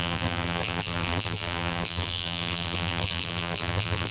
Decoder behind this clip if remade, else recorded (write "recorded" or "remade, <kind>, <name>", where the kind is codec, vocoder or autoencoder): remade, vocoder, BigVGAN v2